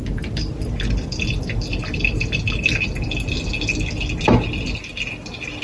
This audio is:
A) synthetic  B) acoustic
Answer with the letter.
B